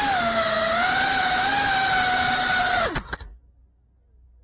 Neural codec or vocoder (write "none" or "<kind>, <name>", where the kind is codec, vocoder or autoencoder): none